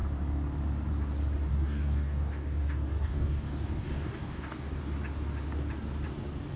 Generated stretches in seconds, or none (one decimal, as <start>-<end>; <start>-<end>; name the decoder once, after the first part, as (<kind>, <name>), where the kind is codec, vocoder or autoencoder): 1.5-4.8 (codec, DAC)

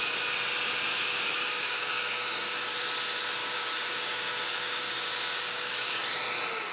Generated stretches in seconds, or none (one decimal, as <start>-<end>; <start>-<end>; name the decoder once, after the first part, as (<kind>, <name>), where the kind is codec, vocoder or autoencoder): 0.9-2.5 (codec, DAC); 3.4-5.9